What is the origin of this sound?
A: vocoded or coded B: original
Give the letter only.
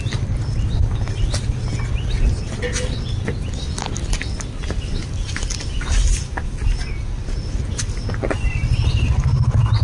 B